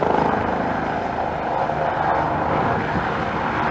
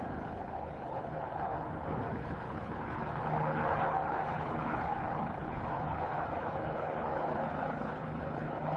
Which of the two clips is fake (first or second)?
second